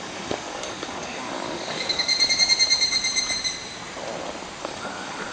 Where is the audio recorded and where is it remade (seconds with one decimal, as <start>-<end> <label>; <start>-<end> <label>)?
0.0-2.1 remade; 2.1-4.6 recorded; 4.6-5.3 remade